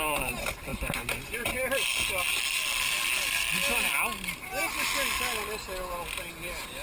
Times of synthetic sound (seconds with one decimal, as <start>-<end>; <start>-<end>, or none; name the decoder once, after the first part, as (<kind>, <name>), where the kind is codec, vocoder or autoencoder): none